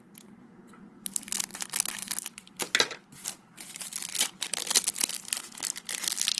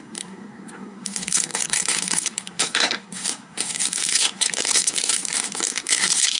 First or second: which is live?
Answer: first